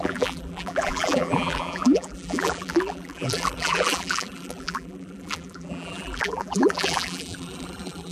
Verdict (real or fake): fake